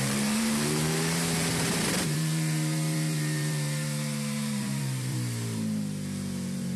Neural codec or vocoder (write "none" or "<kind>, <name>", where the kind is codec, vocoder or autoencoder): vocoder, BigVGAN v2